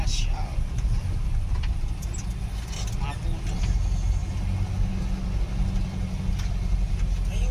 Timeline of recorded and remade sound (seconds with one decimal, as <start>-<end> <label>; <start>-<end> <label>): 0.0-7.5 recorded